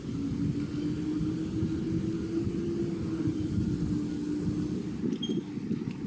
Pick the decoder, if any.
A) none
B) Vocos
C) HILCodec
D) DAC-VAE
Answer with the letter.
A